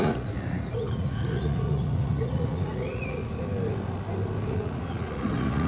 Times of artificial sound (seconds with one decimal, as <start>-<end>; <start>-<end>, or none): 0.0-3.2; 4.5-5.7